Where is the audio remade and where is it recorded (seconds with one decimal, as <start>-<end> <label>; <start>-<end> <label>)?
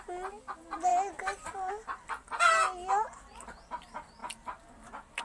0.0-5.2 recorded